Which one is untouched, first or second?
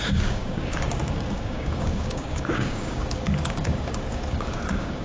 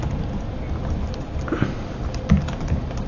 second